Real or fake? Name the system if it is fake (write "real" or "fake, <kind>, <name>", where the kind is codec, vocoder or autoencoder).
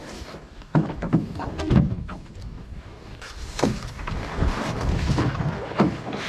fake, codec, DAC